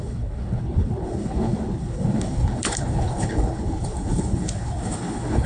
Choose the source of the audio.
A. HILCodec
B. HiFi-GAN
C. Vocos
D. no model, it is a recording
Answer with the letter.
A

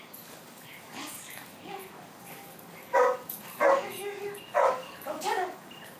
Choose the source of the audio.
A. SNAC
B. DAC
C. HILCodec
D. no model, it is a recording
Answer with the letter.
B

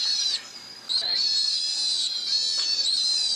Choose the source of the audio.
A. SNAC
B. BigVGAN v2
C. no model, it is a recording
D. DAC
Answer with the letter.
B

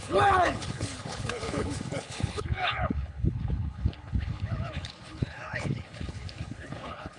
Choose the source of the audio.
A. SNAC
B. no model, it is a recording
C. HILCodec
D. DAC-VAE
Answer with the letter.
C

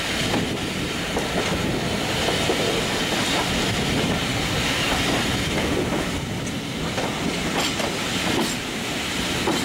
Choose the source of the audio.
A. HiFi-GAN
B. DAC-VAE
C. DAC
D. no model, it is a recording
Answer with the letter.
D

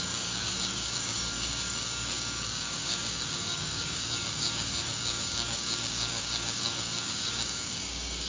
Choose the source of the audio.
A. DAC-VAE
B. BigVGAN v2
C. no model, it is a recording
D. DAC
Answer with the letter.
D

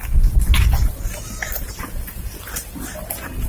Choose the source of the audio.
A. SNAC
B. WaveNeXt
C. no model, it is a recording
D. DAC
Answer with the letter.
C